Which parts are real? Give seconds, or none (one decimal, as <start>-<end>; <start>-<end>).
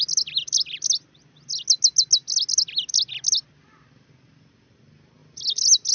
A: 0.0-5.9